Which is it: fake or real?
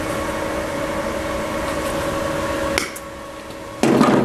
real